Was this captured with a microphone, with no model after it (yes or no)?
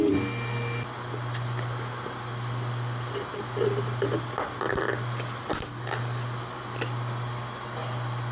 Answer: yes